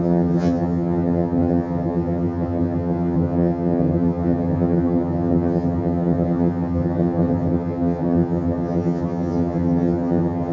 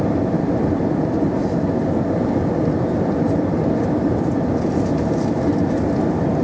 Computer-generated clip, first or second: first